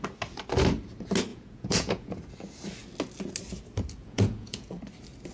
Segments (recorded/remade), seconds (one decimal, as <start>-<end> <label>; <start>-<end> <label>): 0.0-1.3 recorded; 1.3-2.3 remade; 2.3-4.0 recorded; 4.0-4.7 remade; 4.7-5.3 recorded